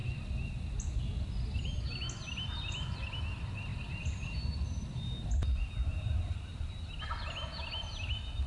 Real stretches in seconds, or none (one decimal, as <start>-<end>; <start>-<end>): 0.0-8.5